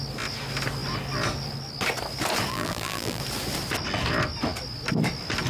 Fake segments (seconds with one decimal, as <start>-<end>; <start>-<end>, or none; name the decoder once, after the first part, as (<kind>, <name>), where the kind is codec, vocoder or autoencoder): 2.5-3.2 (vocoder, BigVGAN v2)